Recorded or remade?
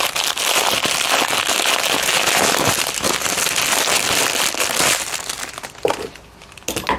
recorded